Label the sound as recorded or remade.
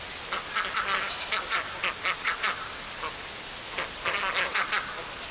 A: recorded